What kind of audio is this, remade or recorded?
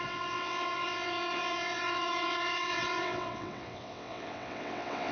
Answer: remade